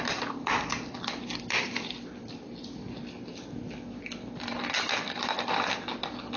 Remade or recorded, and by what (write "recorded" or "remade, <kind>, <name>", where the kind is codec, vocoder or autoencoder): recorded